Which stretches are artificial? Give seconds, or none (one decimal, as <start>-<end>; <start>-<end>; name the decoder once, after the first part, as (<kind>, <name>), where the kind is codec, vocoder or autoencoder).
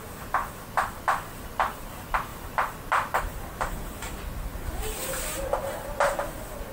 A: 0.4-1.0 (vocoder, BigVGAN v2); 2.3-3.2; 4.5-5.5